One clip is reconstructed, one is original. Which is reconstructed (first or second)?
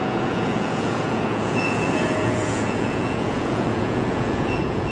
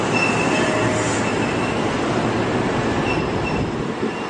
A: first